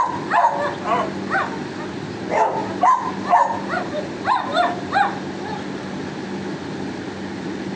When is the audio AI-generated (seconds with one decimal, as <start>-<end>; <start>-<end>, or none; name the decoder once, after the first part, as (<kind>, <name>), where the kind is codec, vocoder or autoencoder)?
none